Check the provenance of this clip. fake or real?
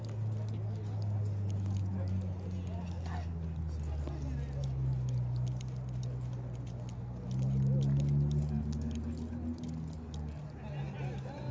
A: real